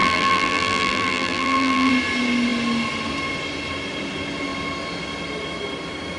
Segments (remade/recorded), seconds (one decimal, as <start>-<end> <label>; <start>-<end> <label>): 0.0-1.9 remade; 1.9-6.2 recorded